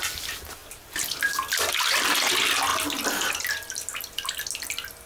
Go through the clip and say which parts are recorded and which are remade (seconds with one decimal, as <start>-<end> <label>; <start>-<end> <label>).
0.0-5.1 recorded